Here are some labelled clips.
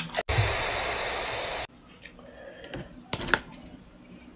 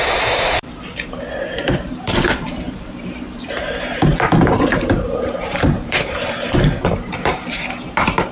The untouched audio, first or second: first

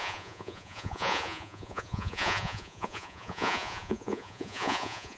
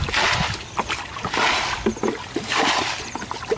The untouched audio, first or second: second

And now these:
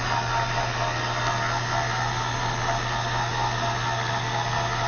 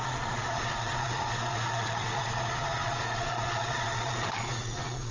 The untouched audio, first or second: first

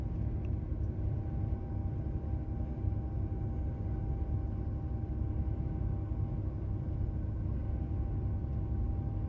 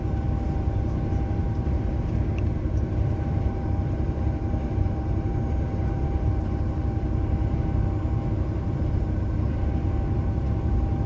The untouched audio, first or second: first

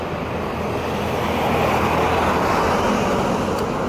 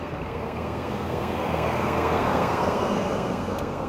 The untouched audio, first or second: first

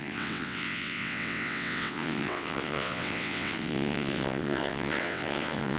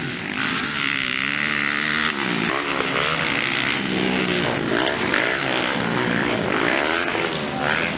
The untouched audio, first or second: second